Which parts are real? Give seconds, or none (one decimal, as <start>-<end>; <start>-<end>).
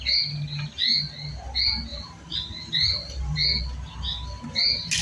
0.0-1.9; 3.6-5.0